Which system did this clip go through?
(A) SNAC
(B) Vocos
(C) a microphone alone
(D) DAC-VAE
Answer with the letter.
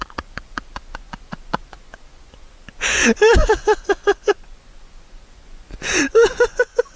B